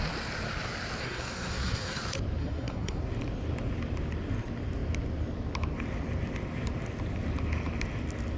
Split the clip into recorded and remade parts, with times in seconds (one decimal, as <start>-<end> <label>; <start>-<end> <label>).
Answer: 0.0-1.0 recorded; 1.0-2.0 remade; 2.0-2.4 recorded; 2.4-3.0 remade; 3.0-8.4 recorded